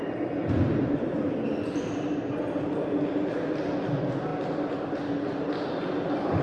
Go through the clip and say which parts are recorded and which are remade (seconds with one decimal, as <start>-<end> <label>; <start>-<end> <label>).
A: 0.0-1.1 recorded; 1.1-2.3 remade; 2.3-4.3 recorded; 4.3-4.8 remade; 4.8-6.4 recorded